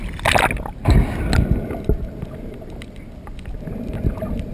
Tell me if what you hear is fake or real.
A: real